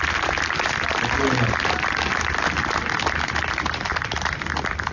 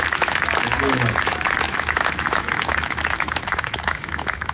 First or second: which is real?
first